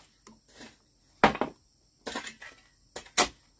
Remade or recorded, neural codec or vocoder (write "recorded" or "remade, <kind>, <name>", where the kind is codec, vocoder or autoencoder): recorded